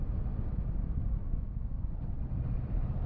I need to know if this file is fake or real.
real